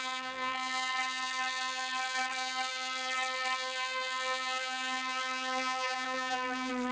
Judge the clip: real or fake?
fake